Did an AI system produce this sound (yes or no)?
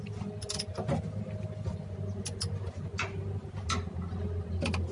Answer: no